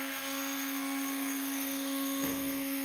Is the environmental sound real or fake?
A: fake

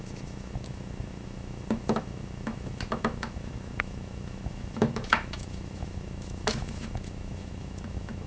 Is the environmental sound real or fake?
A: fake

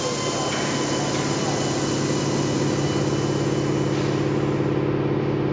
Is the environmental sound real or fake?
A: real